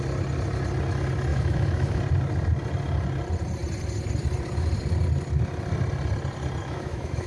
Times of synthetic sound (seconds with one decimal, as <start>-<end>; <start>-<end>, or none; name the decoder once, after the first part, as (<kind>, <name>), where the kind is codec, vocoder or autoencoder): 1.3-2.0 (autoencoder, DAC-VAE); 6.6-7.3